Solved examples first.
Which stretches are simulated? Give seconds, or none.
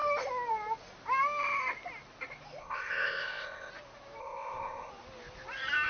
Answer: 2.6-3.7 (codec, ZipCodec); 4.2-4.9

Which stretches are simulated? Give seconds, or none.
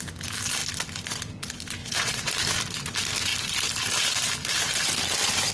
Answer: 1.8-2.3 (vocoder, WaveNeXt)